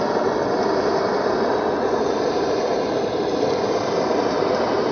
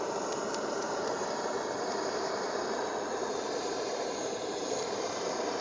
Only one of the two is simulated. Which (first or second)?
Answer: second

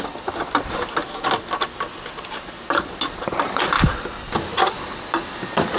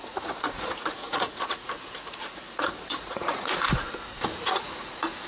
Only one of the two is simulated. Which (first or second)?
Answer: second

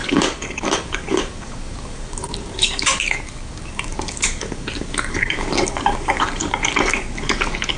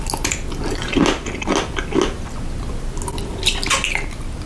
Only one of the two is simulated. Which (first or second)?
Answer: first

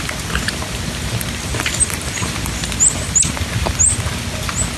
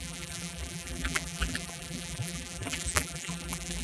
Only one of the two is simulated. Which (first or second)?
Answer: second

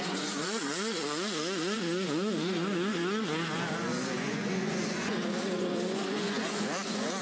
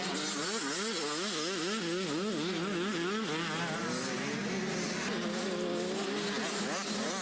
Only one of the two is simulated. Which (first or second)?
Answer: first